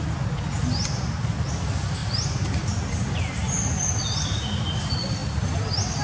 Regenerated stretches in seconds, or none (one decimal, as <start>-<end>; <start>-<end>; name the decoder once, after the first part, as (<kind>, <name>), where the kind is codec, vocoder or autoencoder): 0.0-5.2 (vocoder, BigVGAN v2)